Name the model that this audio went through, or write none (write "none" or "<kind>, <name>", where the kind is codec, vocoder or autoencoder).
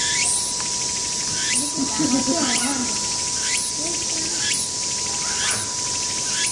none